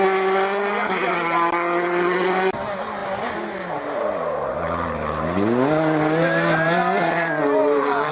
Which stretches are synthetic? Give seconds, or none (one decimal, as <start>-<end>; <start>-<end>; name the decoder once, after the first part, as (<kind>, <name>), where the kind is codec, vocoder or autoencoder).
none